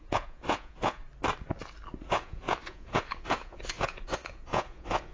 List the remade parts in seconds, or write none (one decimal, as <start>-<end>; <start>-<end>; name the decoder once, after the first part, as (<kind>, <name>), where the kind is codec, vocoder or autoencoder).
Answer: 0.0-1.0 (vocoder, Vocos); 2.1-5.1